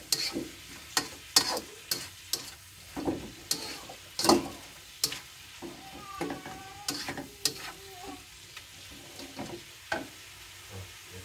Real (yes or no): yes